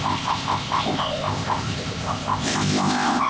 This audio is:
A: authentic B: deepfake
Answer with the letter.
B